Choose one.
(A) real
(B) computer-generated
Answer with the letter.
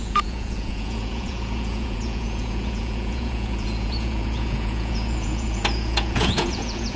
B